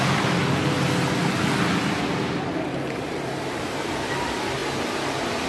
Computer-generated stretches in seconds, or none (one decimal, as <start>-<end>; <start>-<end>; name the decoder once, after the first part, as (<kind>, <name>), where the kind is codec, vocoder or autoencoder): 2.7-3.9 (vocoder, BigVGAN v2)

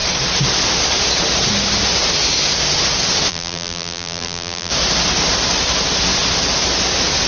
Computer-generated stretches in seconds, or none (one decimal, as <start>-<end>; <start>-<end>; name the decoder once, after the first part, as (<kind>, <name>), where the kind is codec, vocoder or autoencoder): 3.3-4.7 (vocoder, BigVGAN v2)